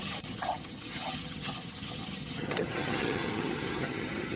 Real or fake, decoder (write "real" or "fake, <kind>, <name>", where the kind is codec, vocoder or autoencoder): fake, vocoder, HiFi-GAN